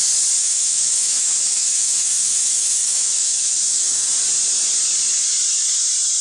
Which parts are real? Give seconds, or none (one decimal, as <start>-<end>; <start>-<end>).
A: 0.0-0.4; 4.1-6.2